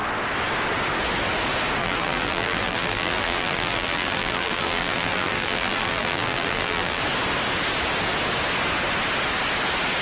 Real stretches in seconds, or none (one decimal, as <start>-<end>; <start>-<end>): 0.0-1.8; 7.0-10.0